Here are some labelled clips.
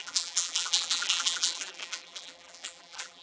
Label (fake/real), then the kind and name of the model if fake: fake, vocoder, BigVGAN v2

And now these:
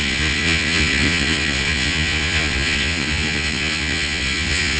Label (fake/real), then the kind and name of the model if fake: fake, vocoder, Vocos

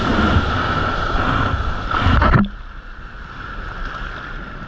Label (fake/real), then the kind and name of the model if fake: real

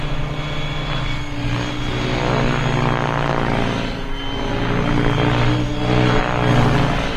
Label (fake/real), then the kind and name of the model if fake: real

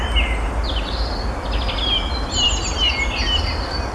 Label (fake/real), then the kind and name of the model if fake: real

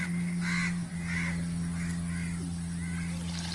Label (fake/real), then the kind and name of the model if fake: real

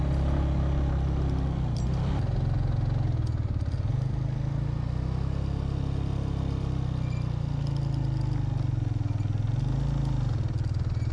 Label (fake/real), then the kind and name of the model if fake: real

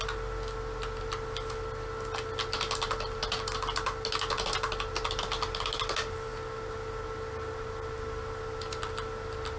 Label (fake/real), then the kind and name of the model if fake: real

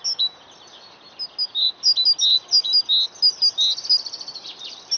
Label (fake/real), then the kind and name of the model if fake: real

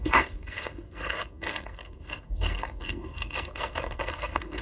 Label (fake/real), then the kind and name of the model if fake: fake, codec, SNAC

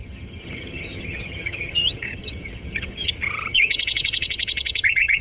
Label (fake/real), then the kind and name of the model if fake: fake, vocoder, HiFi-GAN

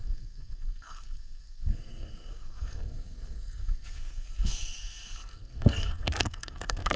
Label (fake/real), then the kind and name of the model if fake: fake, codec, SNAC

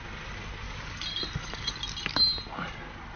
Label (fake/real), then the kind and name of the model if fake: real